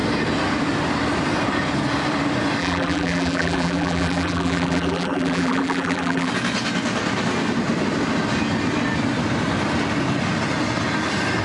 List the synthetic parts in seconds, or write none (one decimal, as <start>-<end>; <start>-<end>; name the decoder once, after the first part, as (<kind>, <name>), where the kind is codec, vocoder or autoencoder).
2.6-6.3 (vocoder, BigVGAN v2)